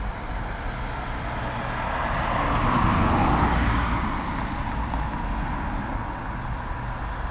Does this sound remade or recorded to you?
recorded